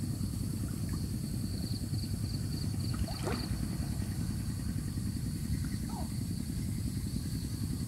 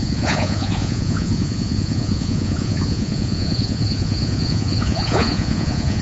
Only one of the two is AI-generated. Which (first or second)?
second